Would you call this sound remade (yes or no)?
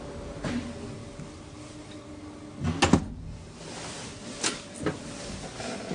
no